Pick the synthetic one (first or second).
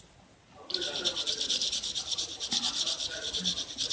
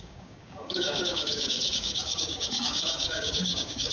second